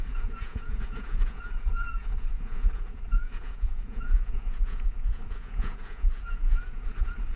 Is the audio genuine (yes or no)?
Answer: no